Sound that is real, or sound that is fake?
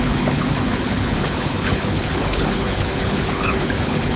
fake